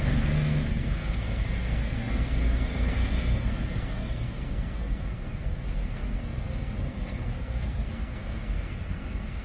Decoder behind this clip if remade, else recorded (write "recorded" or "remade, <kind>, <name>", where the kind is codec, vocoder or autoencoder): remade, codec, SNAC